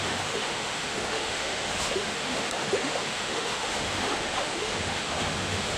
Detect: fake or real fake